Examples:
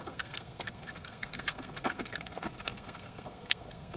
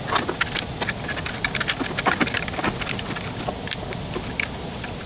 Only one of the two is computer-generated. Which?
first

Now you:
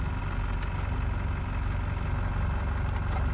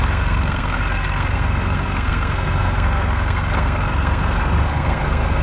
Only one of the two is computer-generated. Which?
second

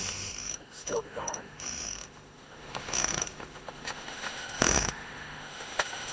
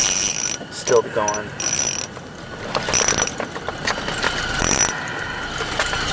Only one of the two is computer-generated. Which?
first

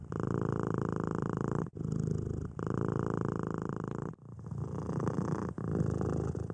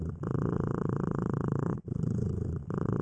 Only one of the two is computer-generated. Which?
second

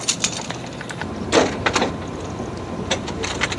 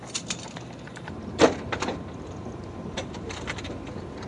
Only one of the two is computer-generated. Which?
second